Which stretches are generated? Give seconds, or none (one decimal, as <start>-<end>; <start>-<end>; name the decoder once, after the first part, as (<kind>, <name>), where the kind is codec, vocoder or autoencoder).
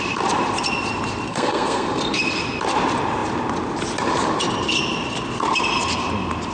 1.3-2.0 (codec, SNAC)